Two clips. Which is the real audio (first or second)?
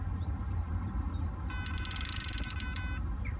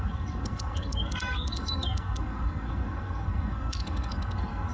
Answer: first